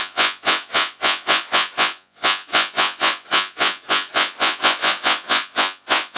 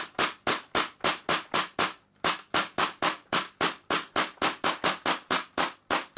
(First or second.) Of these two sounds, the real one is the second